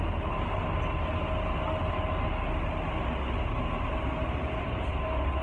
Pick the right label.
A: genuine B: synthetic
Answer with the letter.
A